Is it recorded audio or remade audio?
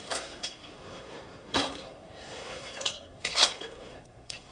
remade